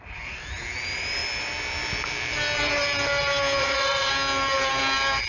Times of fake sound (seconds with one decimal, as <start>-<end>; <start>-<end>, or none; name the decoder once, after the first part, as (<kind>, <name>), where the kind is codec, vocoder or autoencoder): 3.6-4.1 (vocoder, WaveNeXt)